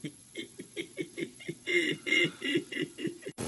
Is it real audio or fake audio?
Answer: fake